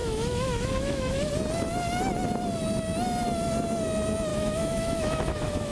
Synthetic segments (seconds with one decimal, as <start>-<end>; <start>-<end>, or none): 0.0-1.3; 4.3-5.7